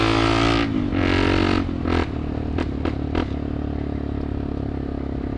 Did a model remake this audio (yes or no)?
no